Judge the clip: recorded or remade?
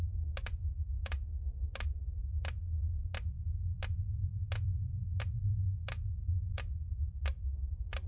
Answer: recorded